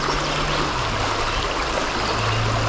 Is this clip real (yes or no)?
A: yes